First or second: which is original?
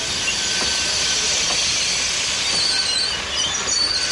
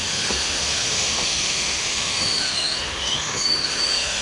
first